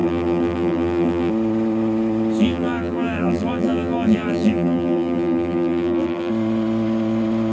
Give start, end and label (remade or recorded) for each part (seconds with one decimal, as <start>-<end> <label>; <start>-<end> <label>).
0.0-1.3 remade; 1.3-2.4 recorded; 2.4-6.3 remade; 6.3-7.5 recorded